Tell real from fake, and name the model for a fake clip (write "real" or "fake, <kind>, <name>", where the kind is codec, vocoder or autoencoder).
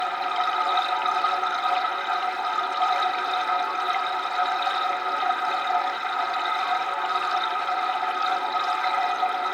real